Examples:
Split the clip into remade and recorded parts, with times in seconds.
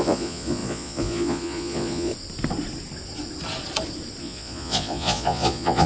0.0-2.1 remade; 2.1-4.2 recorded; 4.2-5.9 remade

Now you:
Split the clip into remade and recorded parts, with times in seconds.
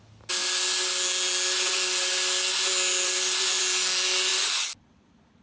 0.0-5.4 recorded